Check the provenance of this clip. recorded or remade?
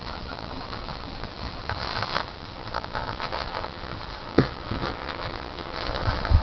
remade